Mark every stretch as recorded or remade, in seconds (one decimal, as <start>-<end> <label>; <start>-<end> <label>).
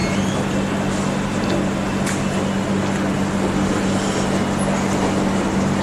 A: 0.0-5.8 recorded